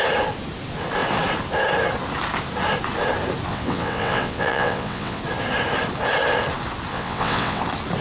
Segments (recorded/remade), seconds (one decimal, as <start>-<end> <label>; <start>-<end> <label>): 0.0-3.5 recorded; 3.5-5.2 remade; 5.2-6.9 recorded; 6.9-7.6 remade; 7.6-8.0 recorded